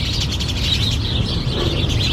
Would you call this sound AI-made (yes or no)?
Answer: no